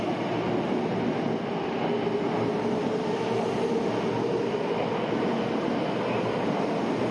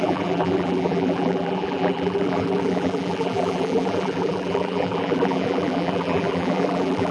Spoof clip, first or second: second